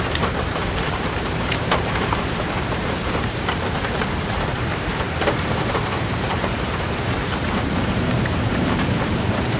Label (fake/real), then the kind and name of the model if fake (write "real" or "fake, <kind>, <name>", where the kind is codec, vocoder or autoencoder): fake, vocoder, BigVGAN v2